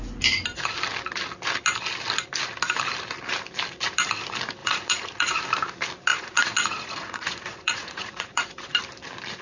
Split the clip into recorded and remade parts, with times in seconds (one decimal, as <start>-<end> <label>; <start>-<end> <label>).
0.0-4.6 recorded; 4.6-5.4 remade; 5.4-6.1 recorded; 6.1-8.8 remade; 8.8-9.4 recorded